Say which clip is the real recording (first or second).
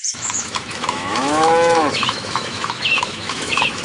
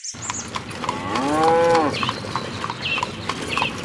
second